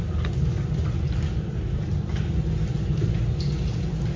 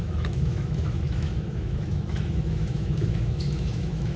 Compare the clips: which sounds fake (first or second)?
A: second